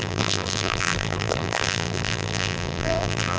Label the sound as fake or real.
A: fake